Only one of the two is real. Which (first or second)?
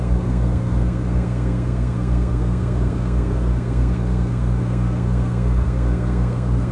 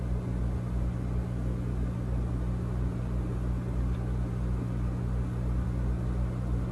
second